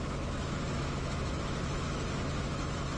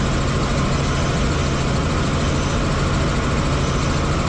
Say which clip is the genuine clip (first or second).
second